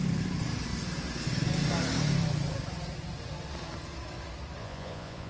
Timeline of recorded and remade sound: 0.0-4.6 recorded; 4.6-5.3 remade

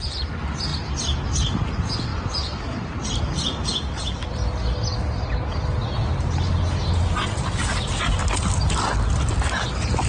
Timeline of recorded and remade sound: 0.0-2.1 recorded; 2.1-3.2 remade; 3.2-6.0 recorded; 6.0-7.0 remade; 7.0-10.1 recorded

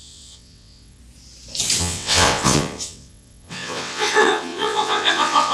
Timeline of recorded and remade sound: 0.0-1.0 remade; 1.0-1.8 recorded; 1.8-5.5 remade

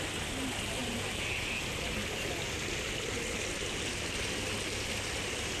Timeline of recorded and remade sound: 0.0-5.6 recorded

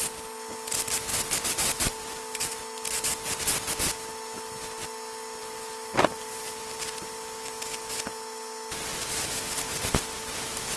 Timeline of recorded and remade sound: 0.0-1.1 recorded; 1.1-2.6 remade; 2.6-5.4 recorded; 5.4-7.0 remade; 7.0-10.8 recorded

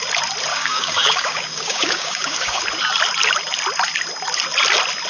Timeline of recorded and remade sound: 0.0-0.5 recorded; 0.5-2.6 remade; 2.6-5.1 recorded